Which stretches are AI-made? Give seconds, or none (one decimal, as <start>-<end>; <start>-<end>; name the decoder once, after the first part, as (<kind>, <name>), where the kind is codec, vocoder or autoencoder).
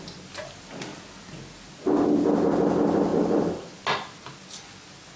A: 3.1-3.8 (vocoder, BigVGAN v2)